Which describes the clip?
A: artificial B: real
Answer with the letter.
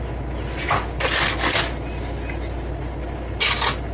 B